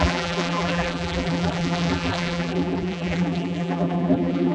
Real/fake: fake